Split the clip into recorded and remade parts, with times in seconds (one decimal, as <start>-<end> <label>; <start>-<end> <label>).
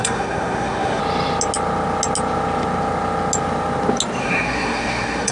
0.0-1.0 remade; 1.0-4.2 recorded; 4.2-5.3 remade